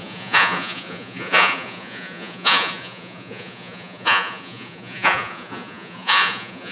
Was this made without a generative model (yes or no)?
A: no